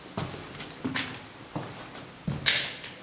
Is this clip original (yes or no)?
yes